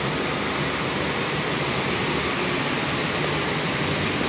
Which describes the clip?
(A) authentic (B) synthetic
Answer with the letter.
A